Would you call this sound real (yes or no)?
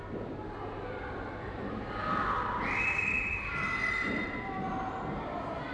yes